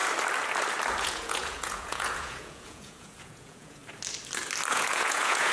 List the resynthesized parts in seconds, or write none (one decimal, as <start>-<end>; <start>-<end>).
1.0-3.8; 4.7-5.5